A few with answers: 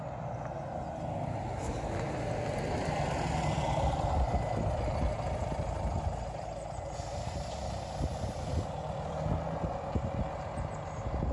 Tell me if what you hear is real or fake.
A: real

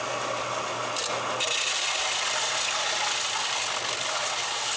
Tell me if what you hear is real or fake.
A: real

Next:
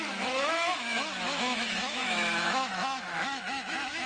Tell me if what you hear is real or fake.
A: fake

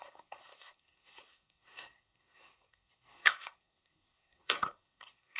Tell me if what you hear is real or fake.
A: fake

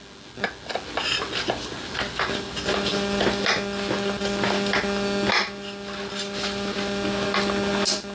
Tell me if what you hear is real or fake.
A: real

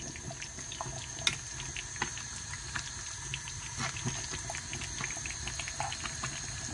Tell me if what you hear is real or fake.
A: real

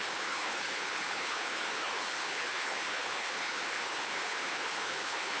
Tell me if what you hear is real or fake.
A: fake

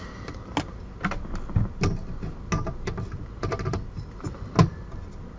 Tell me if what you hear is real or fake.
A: real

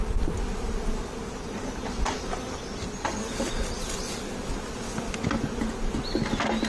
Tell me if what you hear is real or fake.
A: real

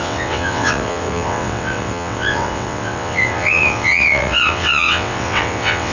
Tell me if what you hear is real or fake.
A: fake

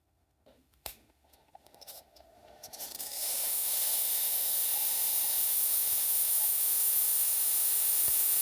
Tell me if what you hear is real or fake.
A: fake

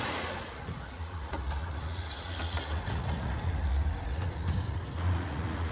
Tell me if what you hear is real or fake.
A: fake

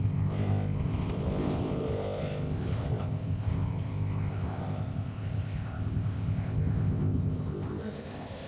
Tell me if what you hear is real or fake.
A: fake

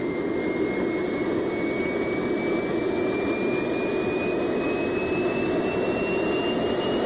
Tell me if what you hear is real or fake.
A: real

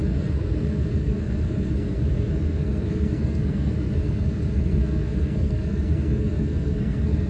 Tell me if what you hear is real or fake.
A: fake